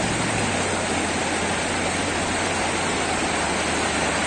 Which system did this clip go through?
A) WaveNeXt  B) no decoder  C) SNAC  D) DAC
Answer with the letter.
B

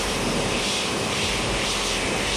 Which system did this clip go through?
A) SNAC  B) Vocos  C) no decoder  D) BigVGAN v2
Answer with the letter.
D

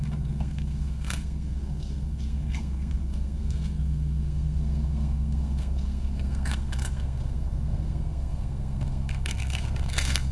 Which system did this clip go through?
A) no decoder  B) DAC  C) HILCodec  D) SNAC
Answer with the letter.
D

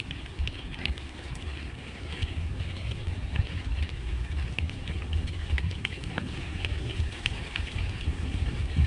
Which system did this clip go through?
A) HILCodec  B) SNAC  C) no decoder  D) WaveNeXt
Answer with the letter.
B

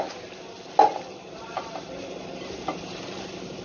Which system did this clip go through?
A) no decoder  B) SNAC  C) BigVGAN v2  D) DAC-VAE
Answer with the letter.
A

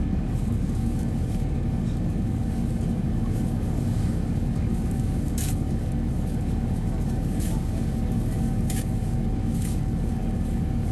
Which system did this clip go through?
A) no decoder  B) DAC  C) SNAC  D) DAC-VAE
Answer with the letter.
B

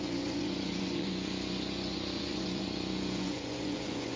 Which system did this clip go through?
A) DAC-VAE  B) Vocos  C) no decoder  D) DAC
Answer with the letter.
B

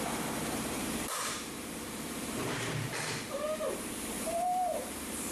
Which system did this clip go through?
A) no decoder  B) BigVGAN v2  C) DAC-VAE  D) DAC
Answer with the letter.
B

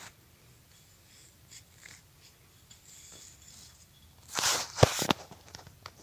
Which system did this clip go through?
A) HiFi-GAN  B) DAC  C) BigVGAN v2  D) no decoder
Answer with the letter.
C